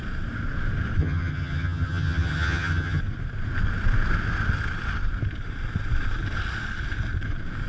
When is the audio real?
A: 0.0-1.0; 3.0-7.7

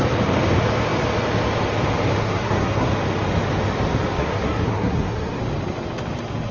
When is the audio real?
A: 0.0-2.2; 2.9-4.2; 5.4-6.5